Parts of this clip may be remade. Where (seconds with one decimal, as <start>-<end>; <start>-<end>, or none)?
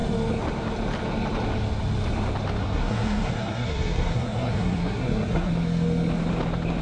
2.6-5.5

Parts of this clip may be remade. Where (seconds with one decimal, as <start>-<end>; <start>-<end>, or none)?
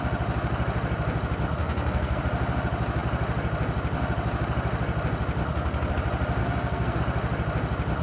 1.6-2.2; 6.4-7.0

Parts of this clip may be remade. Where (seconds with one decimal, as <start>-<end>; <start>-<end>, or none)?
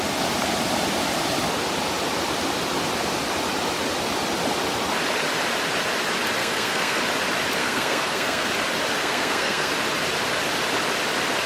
6.4-7.0; 7.6-8.5; 9.0-9.7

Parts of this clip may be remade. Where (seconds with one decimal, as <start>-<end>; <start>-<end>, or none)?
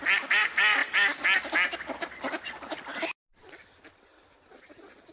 none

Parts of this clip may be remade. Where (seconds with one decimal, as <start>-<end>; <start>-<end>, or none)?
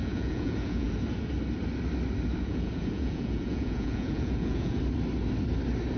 0.0-0.9; 2.4-4.8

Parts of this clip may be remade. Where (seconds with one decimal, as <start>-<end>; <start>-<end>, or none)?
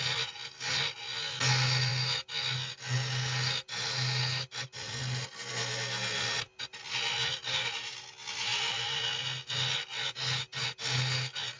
none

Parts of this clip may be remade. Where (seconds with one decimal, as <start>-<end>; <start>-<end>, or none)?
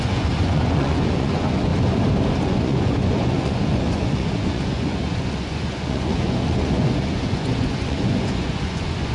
0.0-1.7; 2.4-9.1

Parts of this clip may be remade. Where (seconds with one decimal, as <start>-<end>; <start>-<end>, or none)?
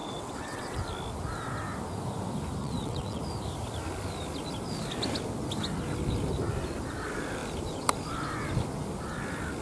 0.0-0.8; 2.6-3.2